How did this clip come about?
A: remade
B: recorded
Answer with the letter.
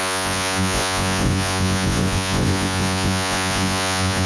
A